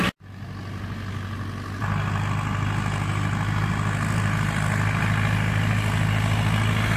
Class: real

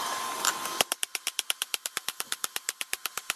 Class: real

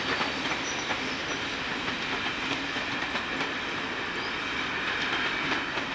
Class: real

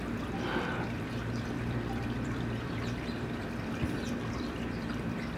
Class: fake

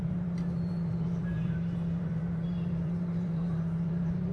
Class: fake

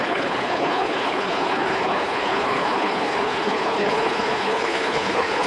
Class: fake